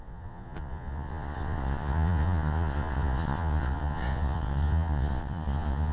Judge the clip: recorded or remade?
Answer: remade